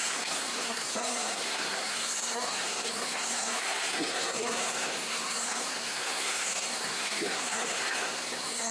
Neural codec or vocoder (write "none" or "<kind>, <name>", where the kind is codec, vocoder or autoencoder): codec, SNAC